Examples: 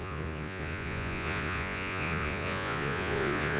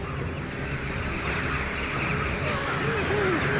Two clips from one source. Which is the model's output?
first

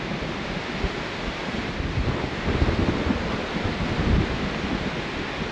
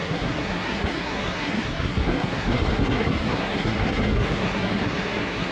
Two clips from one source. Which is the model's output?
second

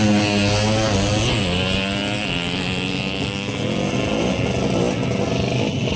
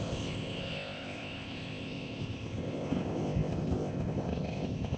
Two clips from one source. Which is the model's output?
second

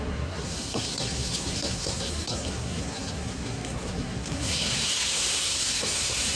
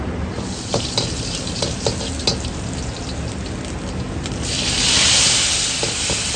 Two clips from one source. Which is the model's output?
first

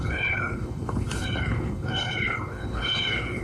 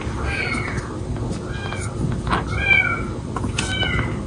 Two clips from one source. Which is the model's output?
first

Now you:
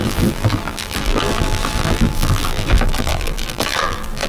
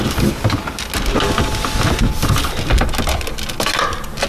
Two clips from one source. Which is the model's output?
first